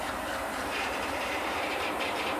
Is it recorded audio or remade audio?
remade